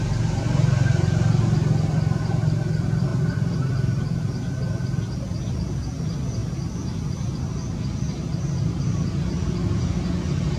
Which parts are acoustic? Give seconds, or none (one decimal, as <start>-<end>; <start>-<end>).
0.0-10.6